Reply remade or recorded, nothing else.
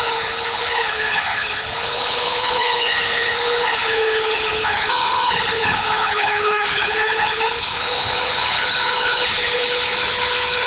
remade